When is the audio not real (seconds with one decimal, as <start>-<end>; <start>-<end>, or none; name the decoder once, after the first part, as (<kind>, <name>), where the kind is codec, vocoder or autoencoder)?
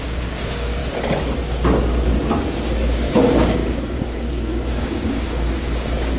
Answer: 0.0-0.8 (codec, DAC); 3.1-6.2